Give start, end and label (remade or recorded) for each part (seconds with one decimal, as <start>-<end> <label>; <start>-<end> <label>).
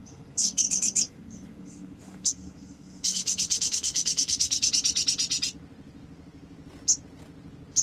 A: 0.0-4.7 remade; 4.7-7.8 recorded